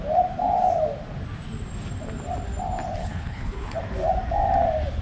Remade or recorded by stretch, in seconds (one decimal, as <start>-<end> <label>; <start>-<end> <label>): 0.0-3.0 recorded; 3.0-3.8 remade; 3.8-5.0 recorded

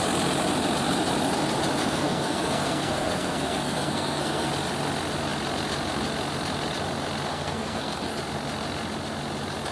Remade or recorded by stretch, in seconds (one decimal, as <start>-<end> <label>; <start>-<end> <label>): 0.0-1.8 recorded; 1.8-4.5 remade; 4.5-7.3 recorded; 7.3-8.1 remade; 8.1-9.7 recorded

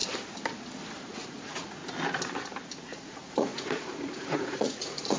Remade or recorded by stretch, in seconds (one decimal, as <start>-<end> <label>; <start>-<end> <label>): 0.0-1.1 recorded; 1.1-1.8 remade; 1.8-2.8 recorded; 2.8-5.2 remade